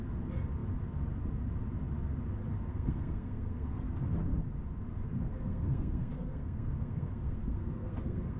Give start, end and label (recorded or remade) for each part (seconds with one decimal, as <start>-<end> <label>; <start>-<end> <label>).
0.0-2.7 recorded; 2.7-3.9 remade; 3.9-5.3 recorded; 5.3-8.4 remade